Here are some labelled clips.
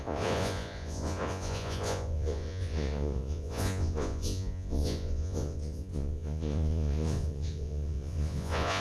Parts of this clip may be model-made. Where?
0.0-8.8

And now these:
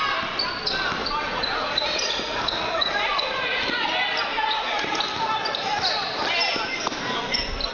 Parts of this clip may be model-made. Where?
1.0-3.9; 4.3-5.0